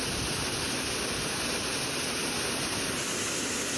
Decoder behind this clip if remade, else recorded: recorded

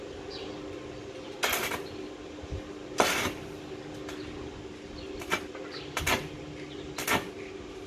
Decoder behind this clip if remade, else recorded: recorded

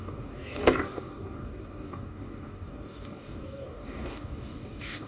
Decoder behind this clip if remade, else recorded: remade, codec, DAC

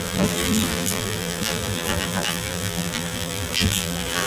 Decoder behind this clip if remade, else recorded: remade, vocoder, BigVGAN v2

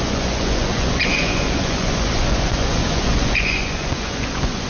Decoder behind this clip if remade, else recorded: remade, vocoder, Vocos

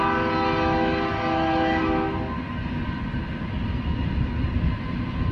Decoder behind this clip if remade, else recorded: recorded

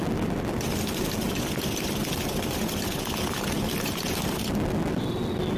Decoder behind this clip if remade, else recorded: recorded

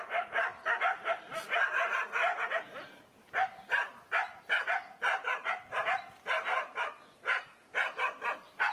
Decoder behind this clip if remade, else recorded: recorded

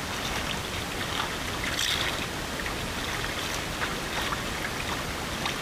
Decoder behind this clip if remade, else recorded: recorded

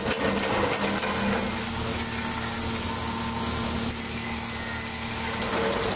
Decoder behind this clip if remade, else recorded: recorded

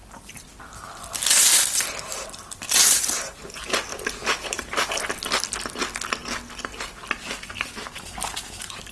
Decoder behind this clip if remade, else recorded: recorded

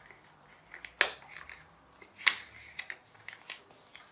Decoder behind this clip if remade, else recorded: recorded